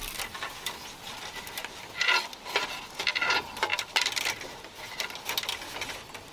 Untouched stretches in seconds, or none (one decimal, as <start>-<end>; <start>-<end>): 0.0-6.3